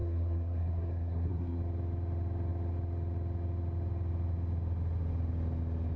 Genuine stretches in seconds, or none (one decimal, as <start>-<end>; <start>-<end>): 1.6-6.0